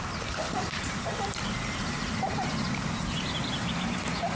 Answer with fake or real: fake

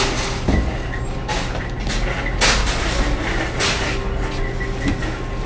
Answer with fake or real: real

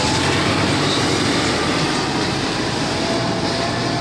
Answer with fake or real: fake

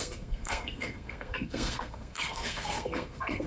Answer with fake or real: fake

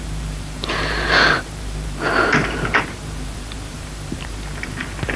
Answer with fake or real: fake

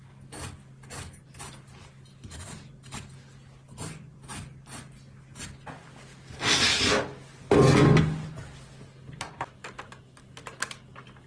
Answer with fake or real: real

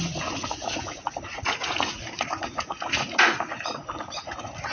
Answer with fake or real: fake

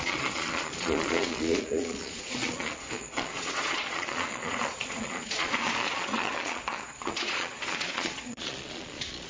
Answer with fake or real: fake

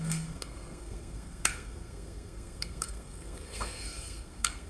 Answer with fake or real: fake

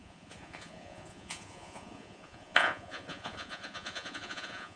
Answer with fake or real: fake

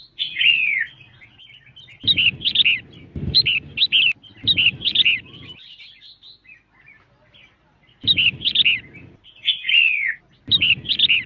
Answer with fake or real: real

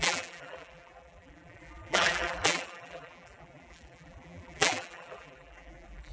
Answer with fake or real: fake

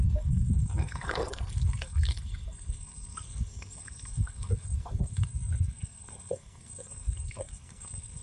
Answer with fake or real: fake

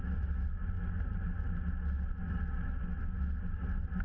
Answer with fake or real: real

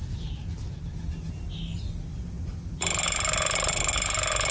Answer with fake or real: real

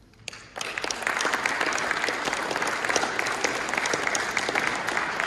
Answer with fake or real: real